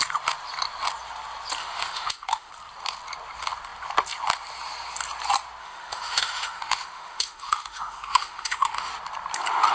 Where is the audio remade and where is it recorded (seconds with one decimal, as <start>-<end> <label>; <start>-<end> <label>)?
0.0-1.6 recorded; 1.6-2.5 remade; 2.5-5.6 recorded; 5.6-8.9 remade; 8.9-9.7 recorded